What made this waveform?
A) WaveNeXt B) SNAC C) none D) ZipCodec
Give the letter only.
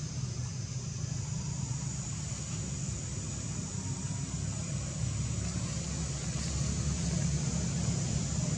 C